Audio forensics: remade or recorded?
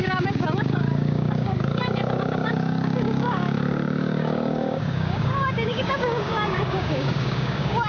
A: remade